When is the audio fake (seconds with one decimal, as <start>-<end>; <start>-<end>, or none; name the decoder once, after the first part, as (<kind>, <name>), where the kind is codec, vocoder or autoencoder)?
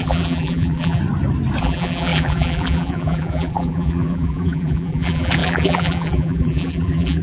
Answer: 0.0-1.0 (vocoder, BigVGAN v2); 1.6-7.2